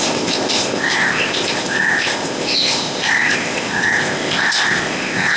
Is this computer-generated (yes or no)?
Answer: yes